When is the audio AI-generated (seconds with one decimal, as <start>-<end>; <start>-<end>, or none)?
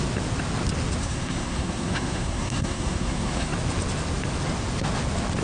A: 1.0-3.5